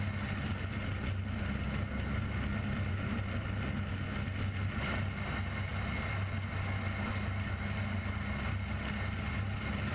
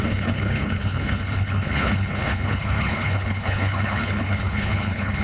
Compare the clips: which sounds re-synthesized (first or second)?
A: second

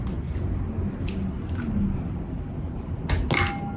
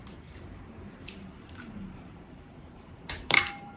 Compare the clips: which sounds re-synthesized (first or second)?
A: second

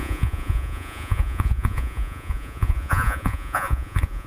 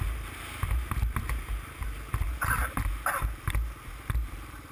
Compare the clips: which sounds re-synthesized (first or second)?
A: first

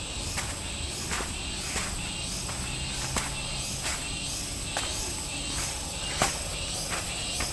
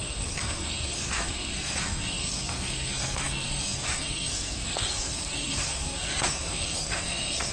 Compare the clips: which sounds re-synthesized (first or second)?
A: second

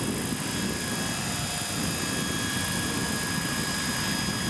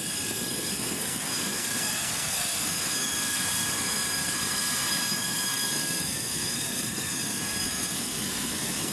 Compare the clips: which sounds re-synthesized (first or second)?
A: second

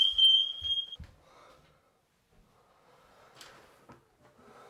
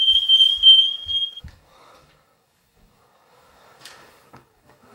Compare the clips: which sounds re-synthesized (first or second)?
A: second